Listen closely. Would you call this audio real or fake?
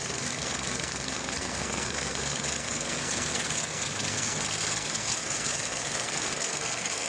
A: fake